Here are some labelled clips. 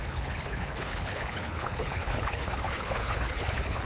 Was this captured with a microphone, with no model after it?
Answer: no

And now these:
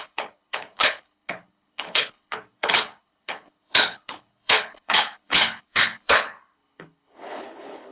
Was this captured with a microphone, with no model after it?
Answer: no